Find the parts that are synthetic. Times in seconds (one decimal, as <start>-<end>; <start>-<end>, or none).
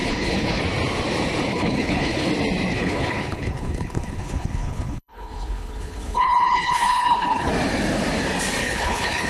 0.0-0.6; 1.5-2.3; 2.7-7.5; 8.6-9.3